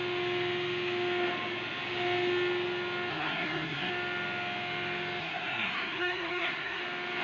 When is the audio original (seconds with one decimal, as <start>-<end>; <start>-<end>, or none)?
0.0-3.1; 3.9-5.2; 6.8-7.2